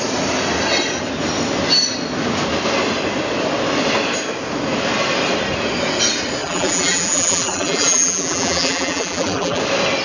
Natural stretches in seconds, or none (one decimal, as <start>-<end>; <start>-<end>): 0.0-6.4; 9.6-10.0